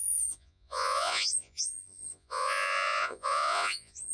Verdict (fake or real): fake